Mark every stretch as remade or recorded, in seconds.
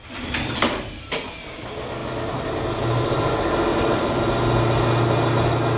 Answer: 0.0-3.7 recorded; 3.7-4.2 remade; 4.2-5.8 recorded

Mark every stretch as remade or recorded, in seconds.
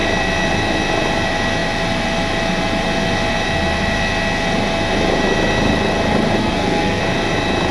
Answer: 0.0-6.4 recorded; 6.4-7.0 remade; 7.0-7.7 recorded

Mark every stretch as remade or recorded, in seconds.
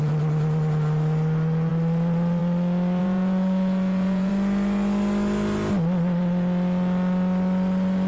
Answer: 0.0-3.0 recorded; 3.0-4.3 remade; 4.3-8.1 recorded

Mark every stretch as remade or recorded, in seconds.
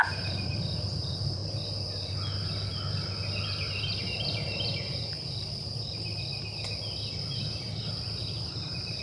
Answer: 0.0-1.4 remade; 1.4-4.0 recorded; 4.0-6.3 remade; 6.3-8.4 recorded; 8.4-9.0 remade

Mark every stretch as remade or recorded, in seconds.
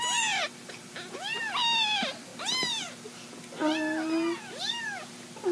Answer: 0.0-2.3 remade; 2.3-4.4 recorded; 4.4-5.5 remade